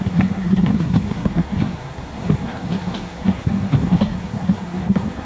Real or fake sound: fake